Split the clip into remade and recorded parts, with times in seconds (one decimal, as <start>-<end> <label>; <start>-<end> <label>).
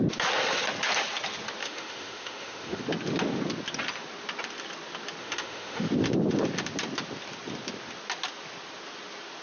0.0-1.6 recorded; 1.6-2.8 remade; 2.8-5.2 recorded; 5.2-5.9 remade; 5.9-9.4 recorded